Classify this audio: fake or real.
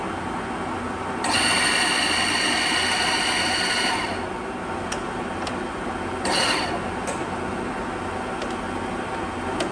real